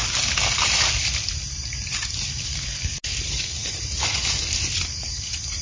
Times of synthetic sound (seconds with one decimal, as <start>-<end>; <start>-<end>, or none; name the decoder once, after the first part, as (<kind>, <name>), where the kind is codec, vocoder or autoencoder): none